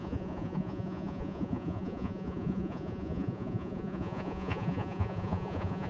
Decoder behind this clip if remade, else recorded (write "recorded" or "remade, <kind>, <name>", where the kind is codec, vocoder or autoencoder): remade, vocoder, Vocos